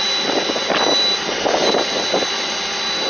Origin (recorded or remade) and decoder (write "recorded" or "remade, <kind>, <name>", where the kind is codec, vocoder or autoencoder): recorded